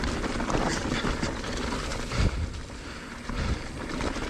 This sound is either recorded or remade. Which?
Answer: remade